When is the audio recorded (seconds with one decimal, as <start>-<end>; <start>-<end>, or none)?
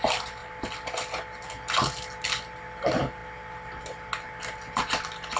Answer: 0.0-5.4